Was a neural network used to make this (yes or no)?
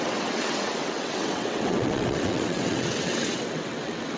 yes